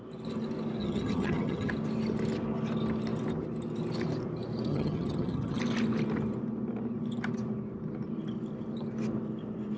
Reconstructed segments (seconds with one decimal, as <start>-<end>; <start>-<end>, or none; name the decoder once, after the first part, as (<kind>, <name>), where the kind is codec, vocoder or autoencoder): 0.8-1.7 (vocoder, HiFi-GAN); 4.7-5.6

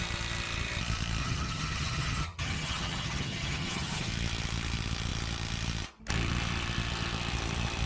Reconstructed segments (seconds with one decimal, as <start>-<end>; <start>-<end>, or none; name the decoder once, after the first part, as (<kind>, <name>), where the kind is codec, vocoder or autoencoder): 1.2-4.1 (vocoder, HiFi-GAN)